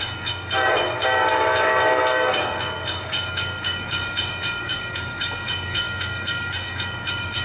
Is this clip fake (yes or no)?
yes